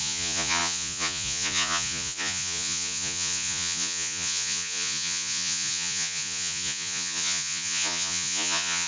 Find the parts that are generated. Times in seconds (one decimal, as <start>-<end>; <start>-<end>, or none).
0.0-8.9